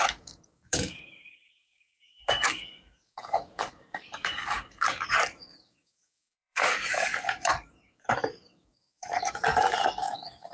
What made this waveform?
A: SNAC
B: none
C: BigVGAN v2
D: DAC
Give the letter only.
D